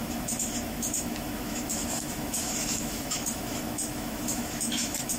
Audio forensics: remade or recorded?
remade